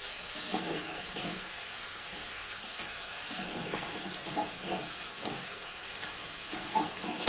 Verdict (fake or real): fake